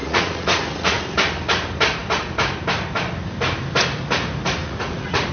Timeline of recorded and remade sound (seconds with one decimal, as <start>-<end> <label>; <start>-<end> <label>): 0.0-1.0 remade; 1.0-4.6 recorded; 4.6-5.3 remade